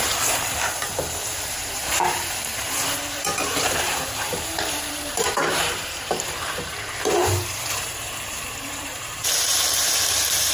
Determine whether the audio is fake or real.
fake